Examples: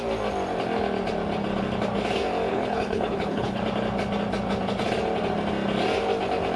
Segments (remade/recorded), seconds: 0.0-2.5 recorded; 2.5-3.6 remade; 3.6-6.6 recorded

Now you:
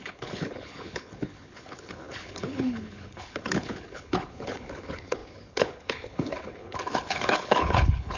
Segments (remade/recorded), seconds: 0.0-8.2 remade

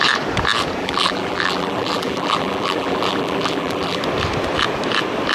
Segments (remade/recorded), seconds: 0.0-0.8 recorded; 0.8-4.0 remade; 4.0-5.3 recorded

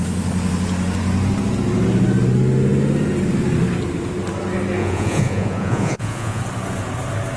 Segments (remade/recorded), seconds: 0.0-4.8 recorded; 4.8-6.4 remade; 6.4-7.4 recorded

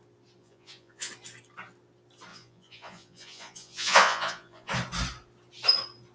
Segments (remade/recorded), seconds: 0.0-0.4 recorded; 0.4-1.1 remade; 1.1-2.3 recorded; 2.3-4.7 remade; 4.7-6.1 recorded

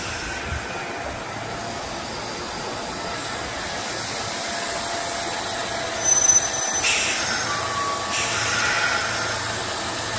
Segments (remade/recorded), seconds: 0.0-10.2 recorded

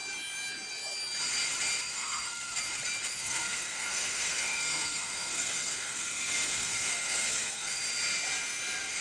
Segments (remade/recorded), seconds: 0.0-1.9 recorded; 1.9-2.6 remade; 2.6-3.2 recorded; 3.2-7.8 remade; 7.8-9.0 recorded